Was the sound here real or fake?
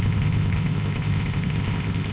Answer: fake